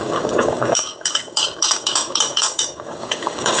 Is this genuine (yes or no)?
no